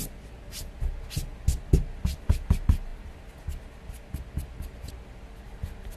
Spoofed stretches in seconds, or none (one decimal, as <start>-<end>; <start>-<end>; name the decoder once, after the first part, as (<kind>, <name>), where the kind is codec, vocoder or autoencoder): none